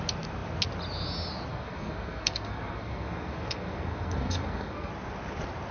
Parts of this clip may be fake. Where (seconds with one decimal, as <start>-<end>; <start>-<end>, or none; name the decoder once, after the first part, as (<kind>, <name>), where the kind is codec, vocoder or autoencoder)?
1.5-4.9 (codec, SNAC)

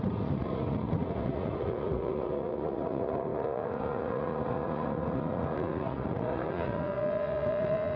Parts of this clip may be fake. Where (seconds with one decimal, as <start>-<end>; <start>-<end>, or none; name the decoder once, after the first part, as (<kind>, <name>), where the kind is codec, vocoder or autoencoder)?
0.0-8.0 (vocoder, Vocos)

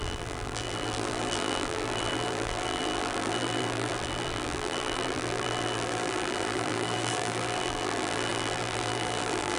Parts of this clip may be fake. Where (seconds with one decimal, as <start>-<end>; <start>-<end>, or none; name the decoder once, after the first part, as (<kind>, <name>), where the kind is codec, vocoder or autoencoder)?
0.0-9.6 (vocoder, BigVGAN v2)

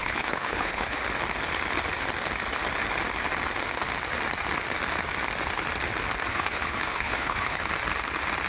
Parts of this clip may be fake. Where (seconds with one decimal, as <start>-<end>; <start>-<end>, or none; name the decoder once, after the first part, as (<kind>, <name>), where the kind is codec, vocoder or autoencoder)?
0.0-1.0 (codec, HILCodec); 6.3-7.7

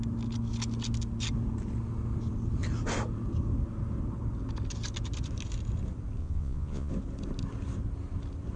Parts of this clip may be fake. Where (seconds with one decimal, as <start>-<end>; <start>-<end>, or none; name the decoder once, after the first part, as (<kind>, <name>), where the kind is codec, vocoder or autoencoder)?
6.2-6.9 (vocoder, Vocos)

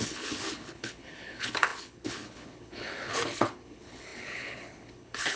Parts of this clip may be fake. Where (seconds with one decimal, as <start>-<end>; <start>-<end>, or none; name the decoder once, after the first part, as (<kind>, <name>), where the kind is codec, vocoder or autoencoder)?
0.0-5.4 (codec, HILCodec)